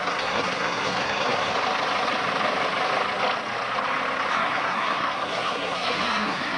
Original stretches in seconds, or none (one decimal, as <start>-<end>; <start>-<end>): 1.5-4.3